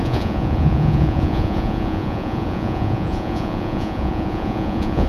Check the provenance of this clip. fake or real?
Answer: fake